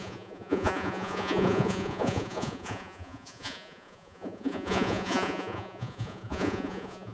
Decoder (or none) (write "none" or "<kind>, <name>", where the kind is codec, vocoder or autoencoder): vocoder, Vocos